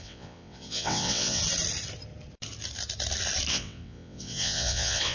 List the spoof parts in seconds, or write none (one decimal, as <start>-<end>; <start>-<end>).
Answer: 0.0-1.4; 3.5-5.1